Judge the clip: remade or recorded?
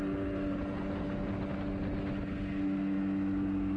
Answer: recorded